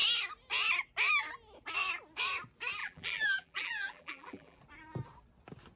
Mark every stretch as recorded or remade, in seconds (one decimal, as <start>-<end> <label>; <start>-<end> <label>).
0.0-2.8 recorded; 2.8-4.6 remade; 4.6-5.8 recorded